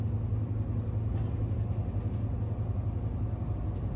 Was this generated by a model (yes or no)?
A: no